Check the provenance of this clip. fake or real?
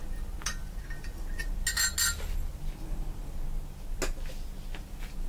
real